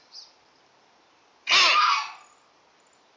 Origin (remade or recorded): recorded